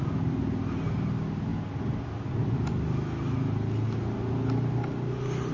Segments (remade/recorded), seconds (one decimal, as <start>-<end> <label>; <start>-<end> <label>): 0.0-5.5 recorded